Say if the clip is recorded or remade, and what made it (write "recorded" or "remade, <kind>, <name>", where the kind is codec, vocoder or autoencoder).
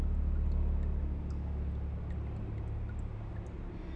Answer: recorded